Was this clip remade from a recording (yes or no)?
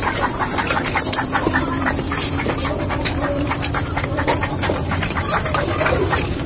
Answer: yes